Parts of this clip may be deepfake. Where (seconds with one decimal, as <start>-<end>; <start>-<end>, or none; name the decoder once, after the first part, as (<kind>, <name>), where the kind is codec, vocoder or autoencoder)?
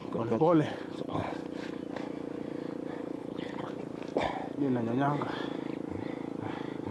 0.0-1.3 (codec, HILCodec); 3.0-3.7